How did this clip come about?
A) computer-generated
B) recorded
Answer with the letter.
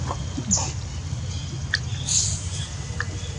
B